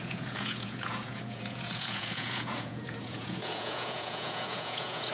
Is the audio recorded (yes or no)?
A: no